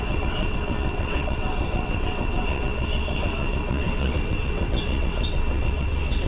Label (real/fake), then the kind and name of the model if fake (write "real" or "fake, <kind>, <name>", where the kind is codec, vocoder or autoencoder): fake, vocoder, WaveNeXt